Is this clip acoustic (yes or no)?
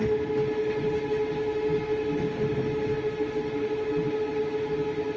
yes